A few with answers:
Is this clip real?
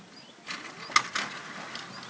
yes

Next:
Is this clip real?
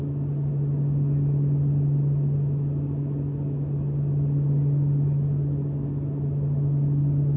yes